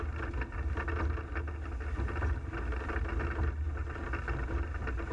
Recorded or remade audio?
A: recorded